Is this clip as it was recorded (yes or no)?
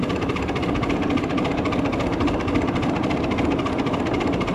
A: yes